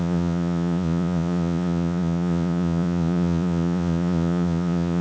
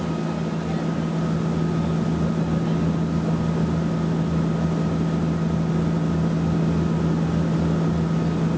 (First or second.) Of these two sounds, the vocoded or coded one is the first